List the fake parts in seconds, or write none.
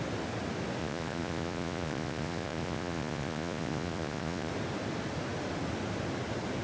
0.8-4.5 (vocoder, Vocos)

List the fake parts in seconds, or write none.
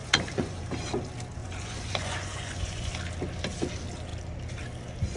0.0-0.6 (vocoder, Vocos); 1.4-2.9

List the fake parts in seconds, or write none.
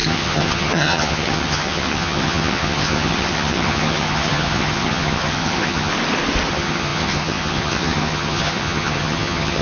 0.0-5.9 (vocoder, HiFi-GAN); 6.5-9.6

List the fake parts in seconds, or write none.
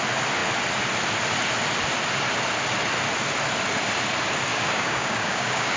4.5-5.8 (codec, DAC)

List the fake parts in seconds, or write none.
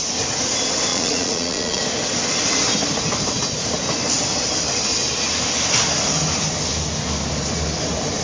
0.9-1.8 (vocoder, Vocos)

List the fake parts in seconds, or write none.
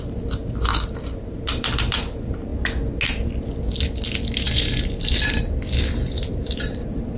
0.0-2.5 (vocoder, BigVGAN v2); 6.3-7.2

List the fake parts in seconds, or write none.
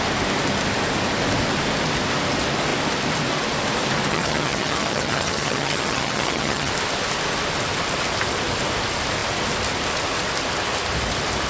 4.1-6.7 (vocoder, HiFi-GAN)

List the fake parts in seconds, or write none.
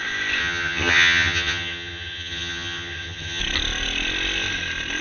0.4-3.4 (vocoder, HiFi-GAN)